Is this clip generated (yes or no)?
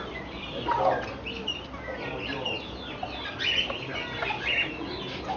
no